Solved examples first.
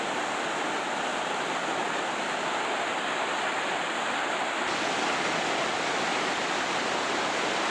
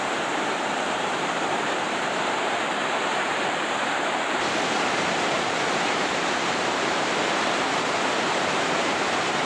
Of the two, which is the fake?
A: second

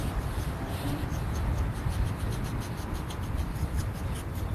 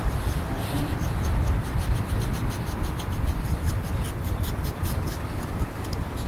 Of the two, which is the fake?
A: second